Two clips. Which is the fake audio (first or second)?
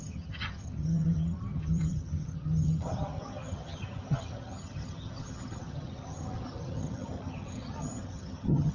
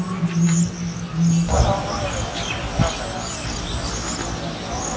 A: first